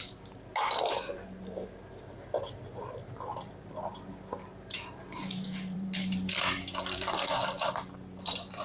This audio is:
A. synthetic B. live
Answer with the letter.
A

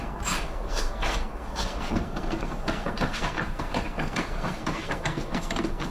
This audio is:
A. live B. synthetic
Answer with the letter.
B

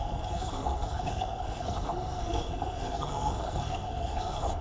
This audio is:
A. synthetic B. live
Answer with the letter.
A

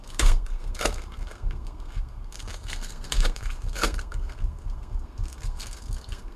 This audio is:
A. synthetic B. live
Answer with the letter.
A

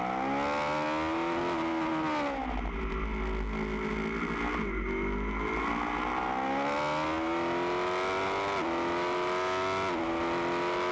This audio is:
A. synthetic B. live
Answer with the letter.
B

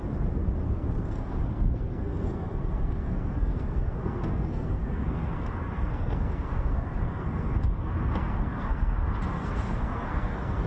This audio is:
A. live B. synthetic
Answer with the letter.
B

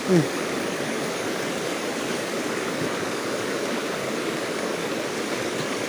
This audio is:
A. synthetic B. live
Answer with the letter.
A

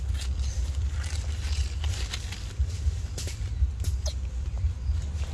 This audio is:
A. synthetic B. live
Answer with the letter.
B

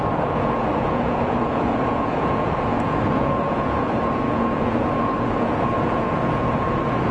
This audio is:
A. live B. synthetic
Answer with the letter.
B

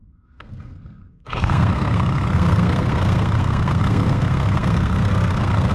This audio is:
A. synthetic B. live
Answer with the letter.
A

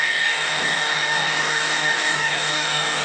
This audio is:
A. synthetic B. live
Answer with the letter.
A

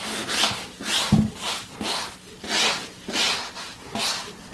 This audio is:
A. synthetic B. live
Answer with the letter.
B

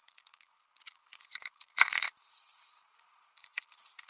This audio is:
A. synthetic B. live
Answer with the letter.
A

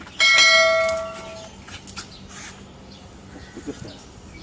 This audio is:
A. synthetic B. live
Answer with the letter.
B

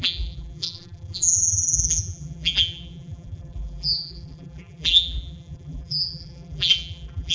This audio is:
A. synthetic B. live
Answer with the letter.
A